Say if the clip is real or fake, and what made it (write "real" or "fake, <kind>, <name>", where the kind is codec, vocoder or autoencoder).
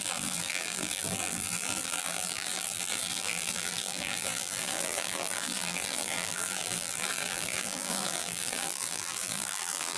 fake, vocoder, BigVGAN v2